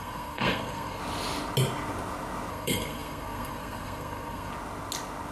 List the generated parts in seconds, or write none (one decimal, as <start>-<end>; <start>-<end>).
0.0-1.0; 2.5-4.5